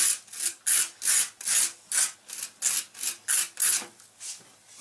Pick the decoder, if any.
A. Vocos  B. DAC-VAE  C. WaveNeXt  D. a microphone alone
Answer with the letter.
D